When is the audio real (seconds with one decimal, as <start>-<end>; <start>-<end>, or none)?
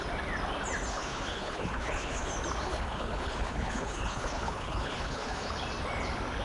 0.0-0.9; 2.3-2.7; 5.5-6.4